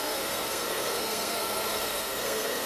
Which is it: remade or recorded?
remade